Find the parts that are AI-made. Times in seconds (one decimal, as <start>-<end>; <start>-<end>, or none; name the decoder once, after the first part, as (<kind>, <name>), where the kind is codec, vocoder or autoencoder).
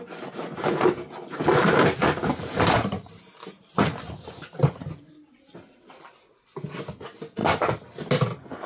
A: 1.4-5.0 (vocoder, BigVGAN v2)